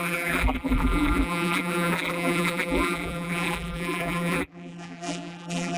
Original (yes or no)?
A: no